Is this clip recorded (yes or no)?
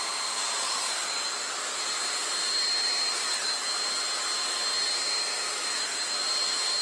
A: yes